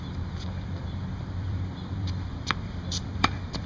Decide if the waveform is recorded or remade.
remade